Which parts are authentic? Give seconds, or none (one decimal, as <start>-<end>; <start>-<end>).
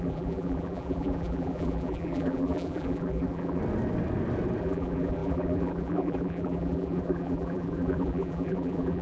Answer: 3.6-4.6